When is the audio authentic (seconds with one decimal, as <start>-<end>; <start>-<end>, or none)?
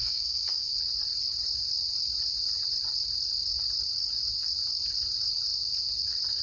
0.8-6.4